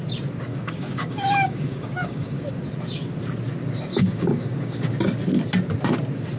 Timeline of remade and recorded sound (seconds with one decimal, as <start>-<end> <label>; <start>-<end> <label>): 0.0-0.5 recorded; 0.5-2.4 remade; 2.4-3.9 recorded; 3.9-5.0 remade; 5.0-6.4 recorded